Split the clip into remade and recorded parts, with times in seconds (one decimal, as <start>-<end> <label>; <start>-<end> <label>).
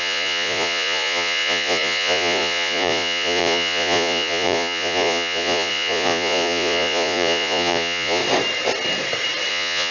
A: 0.0-8.2 remade; 8.2-9.5 recorded; 9.5-9.9 remade